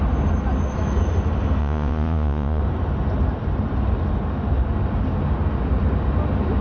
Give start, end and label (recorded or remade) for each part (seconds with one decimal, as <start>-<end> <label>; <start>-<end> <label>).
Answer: 0.0-1.6 recorded; 1.6-2.6 remade; 2.6-6.6 recorded